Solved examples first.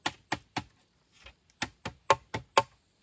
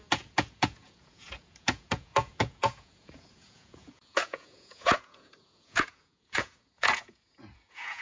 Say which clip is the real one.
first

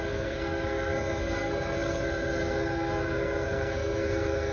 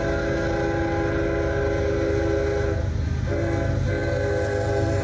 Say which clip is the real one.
second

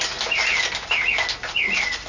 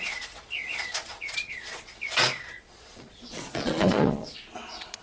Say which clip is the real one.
first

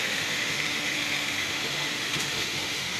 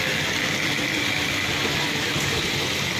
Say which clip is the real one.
second